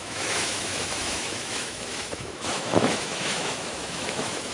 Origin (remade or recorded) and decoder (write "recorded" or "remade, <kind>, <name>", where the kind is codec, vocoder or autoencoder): remade, autoencoder, DAC-VAE